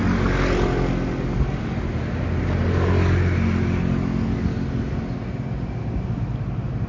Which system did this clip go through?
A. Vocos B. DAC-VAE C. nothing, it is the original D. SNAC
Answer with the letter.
C